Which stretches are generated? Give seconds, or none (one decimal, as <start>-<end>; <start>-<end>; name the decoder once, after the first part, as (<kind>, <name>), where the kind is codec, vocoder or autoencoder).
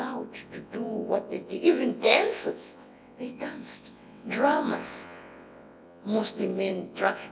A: 0.0-7.3 (vocoder, WaveNeXt)